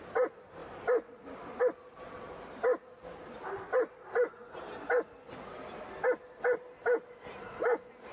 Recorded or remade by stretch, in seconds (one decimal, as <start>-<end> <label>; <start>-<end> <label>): 0.0-8.1 recorded